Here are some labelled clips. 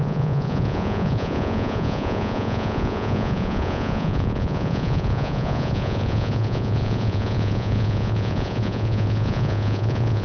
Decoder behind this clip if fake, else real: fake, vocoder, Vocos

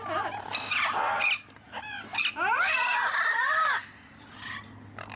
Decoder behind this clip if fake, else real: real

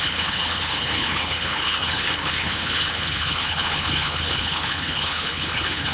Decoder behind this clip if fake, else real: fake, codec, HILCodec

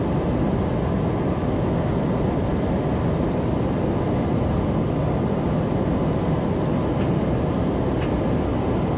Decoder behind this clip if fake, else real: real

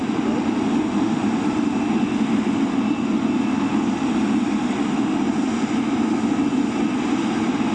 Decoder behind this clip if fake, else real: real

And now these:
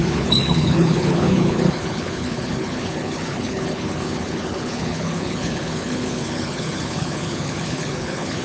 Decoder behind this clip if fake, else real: fake, codec, HILCodec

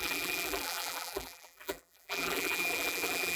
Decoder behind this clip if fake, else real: fake, vocoder, BigVGAN v2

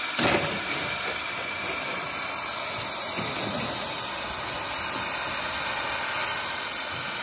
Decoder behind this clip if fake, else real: real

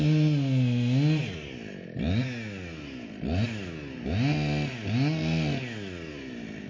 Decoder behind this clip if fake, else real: real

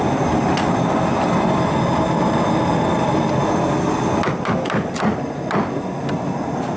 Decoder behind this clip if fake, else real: real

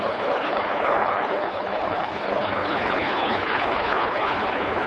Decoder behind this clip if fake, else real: fake, codec, HILCodec